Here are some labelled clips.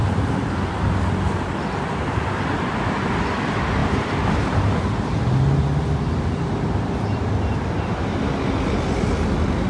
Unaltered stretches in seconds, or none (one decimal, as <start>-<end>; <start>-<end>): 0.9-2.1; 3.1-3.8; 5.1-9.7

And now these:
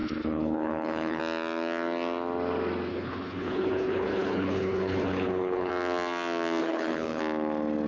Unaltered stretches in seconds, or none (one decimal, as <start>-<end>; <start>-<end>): 1.2-2.9; 5.7-6.6; 7.2-7.9

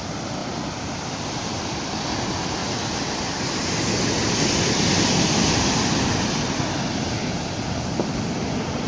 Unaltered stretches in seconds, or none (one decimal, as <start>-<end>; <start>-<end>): 0.0-8.9

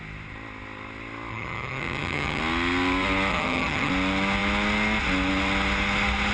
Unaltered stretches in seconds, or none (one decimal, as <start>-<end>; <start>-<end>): 0.0-1.3; 2.4-3.3; 3.9-6.3